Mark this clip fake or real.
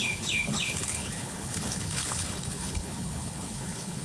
fake